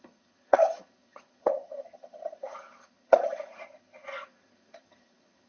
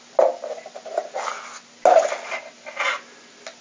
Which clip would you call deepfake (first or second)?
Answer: first